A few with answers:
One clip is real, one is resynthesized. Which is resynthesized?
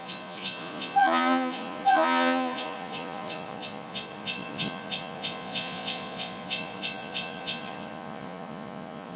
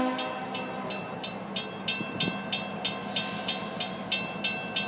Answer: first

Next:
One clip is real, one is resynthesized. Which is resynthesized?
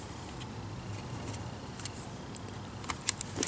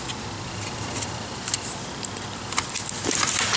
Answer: first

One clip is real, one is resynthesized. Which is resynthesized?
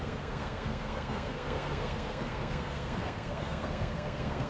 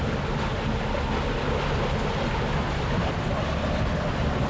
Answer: first